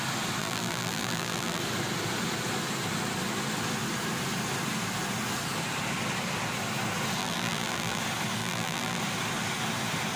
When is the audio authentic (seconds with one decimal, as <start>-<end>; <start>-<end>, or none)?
0.0-0.4; 1.6-7.2; 8.0-8.4; 9.0-10.2